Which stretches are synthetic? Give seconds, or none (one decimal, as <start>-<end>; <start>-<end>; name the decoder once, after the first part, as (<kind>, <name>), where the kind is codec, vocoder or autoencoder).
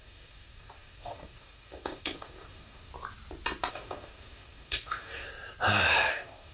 0.0-2.9 (codec, DAC); 3.7-5.3; 6.1-6.5